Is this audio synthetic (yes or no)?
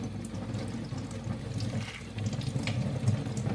no